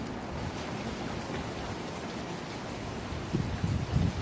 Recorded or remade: recorded